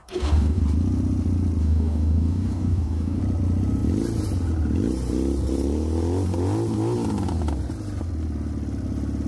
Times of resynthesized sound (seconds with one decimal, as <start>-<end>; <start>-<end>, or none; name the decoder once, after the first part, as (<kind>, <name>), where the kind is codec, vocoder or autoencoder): 0.0-0.6 (codec, DAC); 1.6-3.2